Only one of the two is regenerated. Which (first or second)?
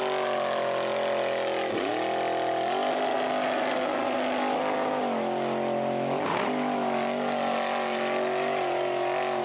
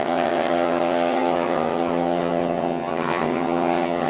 second